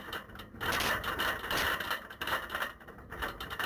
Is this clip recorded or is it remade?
remade